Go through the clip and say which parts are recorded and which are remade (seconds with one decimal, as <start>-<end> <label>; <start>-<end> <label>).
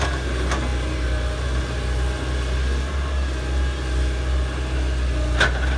0.0-5.8 recorded